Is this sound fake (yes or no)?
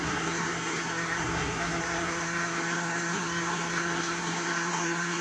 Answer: yes